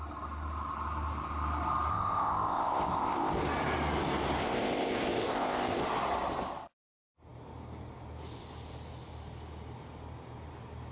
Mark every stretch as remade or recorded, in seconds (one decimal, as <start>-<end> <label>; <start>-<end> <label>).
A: 0.0-1.9 recorded; 1.9-3.4 remade; 3.4-4.4 recorded; 4.4-5.8 remade; 5.8-10.9 recorded